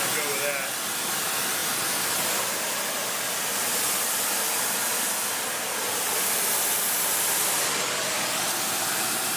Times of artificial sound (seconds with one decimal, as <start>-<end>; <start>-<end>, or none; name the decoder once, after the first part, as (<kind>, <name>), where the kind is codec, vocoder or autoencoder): 1.6-6.5 (vocoder, BigVGAN v2)